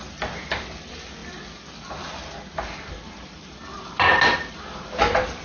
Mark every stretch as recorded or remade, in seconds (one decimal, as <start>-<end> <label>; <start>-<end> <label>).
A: 0.0-5.4 recorded